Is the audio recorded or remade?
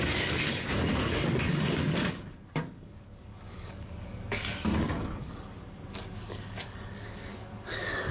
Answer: remade